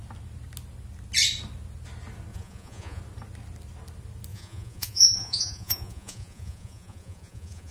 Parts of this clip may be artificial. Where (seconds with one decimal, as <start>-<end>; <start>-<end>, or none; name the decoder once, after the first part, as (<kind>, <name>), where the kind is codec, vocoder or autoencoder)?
2.3-3.0 (vocoder, Vocos); 4.3-7.7